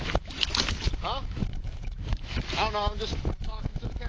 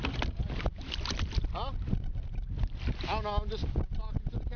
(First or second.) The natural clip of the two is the second